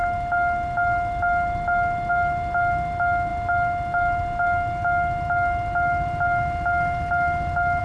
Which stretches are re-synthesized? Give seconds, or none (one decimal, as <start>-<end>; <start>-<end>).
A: none